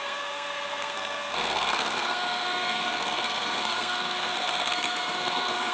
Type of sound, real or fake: fake